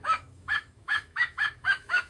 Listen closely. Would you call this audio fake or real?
fake